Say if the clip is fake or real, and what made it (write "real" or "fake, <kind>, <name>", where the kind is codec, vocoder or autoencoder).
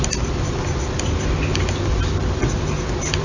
real